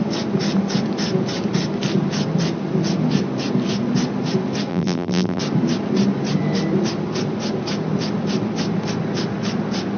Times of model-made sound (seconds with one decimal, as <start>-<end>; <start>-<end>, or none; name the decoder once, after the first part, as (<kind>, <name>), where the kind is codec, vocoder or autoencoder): 4.7-5.4 (vocoder, BigVGAN v2)